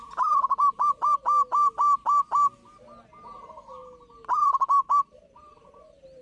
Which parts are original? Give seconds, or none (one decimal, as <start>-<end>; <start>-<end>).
0.0-6.2